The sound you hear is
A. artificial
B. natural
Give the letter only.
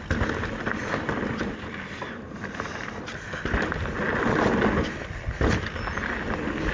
B